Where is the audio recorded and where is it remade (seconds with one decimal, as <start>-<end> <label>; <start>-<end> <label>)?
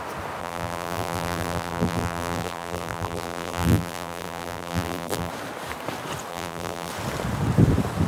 0.0-0.4 recorded; 0.4-5.3 remade; 5.3-6.3 recorded; 6.3-6.9 remade; 6.9-8.1 recorded